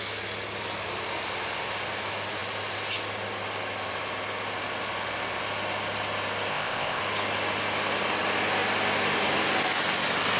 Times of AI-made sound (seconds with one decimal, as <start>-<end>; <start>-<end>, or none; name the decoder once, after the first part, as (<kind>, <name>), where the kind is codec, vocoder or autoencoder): 6.5-7.0 (codec, ZipCodec)